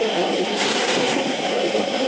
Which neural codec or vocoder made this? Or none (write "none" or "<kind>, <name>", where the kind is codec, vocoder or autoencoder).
codec, SNAC